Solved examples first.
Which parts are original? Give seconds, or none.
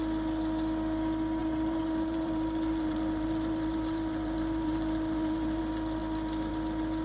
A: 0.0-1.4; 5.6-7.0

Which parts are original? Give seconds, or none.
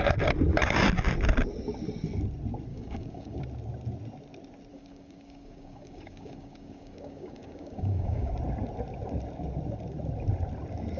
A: 0.0-2.7; 3.4-4.7; 8.3-11.0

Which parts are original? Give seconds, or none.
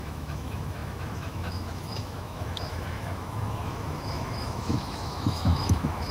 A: none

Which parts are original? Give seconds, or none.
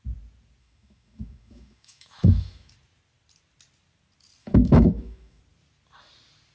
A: 0.0-0.6; 2.7-4.4; 5.4-6.5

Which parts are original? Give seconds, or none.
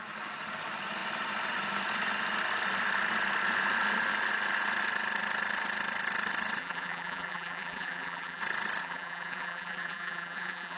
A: 0.0-6.6; 8.4-8.8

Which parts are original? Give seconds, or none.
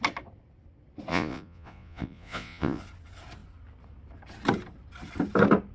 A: 0.0-1.1; 2.8-5.7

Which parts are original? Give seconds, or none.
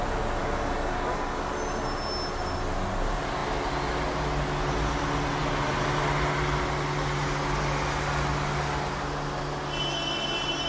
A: 0.0-0.4; 1.5-10.7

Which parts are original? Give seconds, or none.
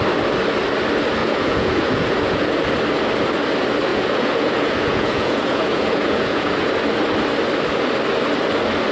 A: 0.0-1.2; 2.6-3.9; 6.5-8.9